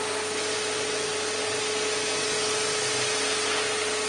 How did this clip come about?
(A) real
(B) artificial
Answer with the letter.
A